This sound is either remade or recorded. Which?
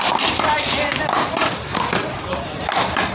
recorded